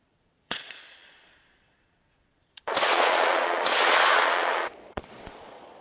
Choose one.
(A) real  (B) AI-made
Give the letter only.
B